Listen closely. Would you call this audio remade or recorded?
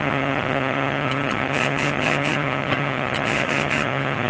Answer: remade